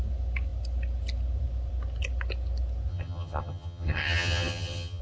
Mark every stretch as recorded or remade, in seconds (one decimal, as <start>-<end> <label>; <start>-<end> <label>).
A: 0.0-2.9 recorded; 2.9-5.0 remade